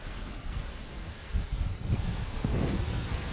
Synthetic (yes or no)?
yes